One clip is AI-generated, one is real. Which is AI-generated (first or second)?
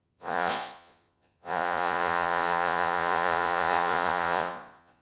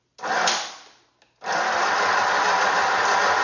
first